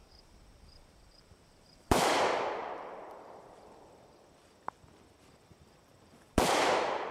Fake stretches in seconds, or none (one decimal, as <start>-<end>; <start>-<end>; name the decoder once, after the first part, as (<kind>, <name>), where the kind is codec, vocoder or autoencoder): 0.0-2.1 (vocoder, BigVGAN v2); 2.6-3.4; 5.5-7.1